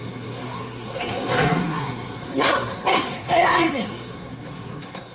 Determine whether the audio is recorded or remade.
remade